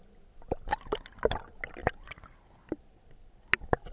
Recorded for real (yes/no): yes